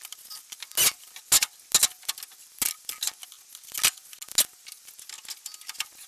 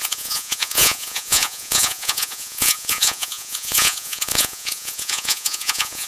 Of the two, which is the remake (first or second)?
second